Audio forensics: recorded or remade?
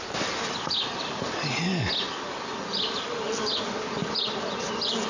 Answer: recorded